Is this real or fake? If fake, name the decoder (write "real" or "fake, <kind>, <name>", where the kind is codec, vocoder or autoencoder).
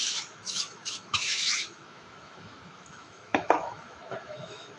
fake, autoencoder, DAC-VAE